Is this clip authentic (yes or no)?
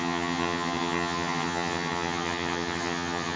no